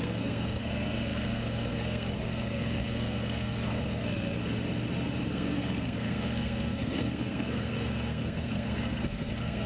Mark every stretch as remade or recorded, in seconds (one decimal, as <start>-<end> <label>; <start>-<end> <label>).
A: 0.0-4.4 remade; 4.4-5.3 recorded; 5.3-9.7 remade